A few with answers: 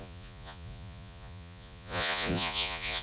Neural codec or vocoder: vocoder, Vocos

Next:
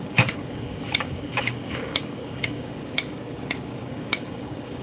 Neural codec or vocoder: codec, DAC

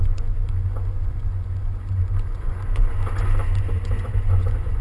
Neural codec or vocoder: vocoder, Vocos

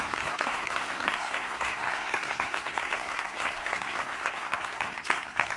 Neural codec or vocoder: codec, SNAC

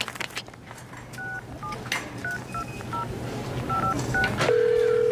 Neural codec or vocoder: none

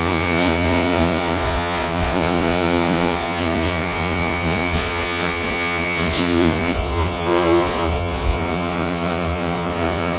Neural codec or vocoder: vocoder, Vocos